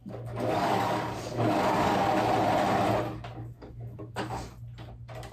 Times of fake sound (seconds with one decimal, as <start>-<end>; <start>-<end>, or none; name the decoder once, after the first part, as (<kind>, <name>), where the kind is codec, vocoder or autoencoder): 0.0-2.2 (codec, DAC); 3.4-4.4